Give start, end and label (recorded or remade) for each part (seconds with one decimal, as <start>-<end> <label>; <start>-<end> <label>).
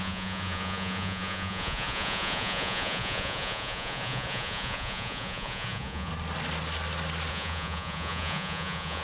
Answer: 0.0-6.1 remade; 6.1-7.3 recorded; 7.3-9.0 remade